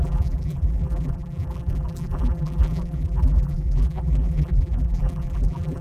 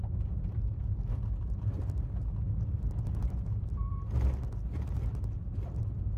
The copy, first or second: first